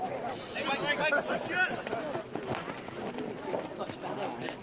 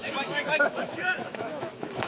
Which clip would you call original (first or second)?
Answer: first